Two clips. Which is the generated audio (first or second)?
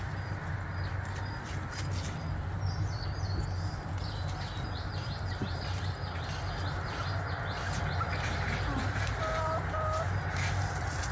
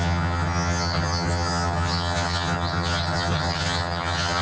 second